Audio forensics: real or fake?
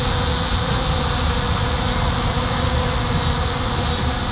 real